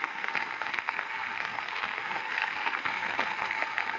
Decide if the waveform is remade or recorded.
remade